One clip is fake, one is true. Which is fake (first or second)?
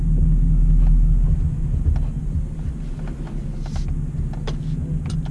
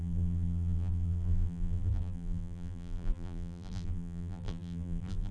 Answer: second